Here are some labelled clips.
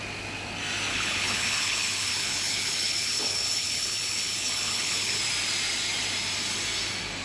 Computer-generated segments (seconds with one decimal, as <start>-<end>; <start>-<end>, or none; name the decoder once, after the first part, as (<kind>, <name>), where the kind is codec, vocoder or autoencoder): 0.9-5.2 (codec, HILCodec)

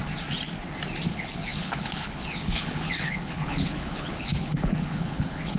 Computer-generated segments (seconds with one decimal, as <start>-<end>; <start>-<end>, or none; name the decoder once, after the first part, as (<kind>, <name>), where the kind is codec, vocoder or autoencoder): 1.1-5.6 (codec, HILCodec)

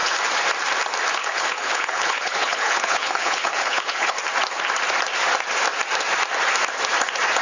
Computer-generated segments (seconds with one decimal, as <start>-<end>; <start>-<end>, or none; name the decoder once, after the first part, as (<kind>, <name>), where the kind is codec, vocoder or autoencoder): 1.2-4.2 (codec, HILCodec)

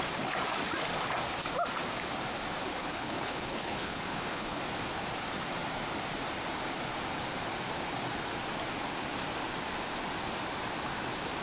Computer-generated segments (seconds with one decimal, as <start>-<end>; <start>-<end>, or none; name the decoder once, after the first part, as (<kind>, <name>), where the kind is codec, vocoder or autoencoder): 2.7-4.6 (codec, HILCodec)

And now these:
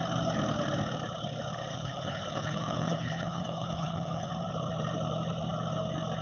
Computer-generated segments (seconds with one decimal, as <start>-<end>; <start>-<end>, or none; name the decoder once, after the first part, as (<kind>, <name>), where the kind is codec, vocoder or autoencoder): 1.7-4.3 (codec, HILCodec)

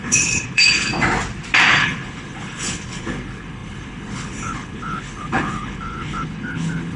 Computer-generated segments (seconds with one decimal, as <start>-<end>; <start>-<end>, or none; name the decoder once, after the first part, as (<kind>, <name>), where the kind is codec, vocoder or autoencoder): 0.0-0.9 (codec, HILCodec); 1.7-7.0

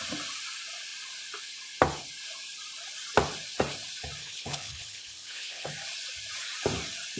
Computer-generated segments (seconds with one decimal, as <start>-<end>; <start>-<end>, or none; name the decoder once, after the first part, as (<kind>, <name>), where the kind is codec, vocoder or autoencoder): 4.2-5.7 (codec, HILCodec)

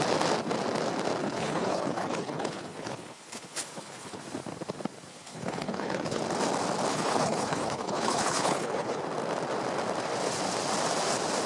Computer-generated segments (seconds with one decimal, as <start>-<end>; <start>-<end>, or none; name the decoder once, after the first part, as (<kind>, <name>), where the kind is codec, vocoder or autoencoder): 1.2-4.2 (codec, HILCodec); 5.1-6.2; 6.9-9.0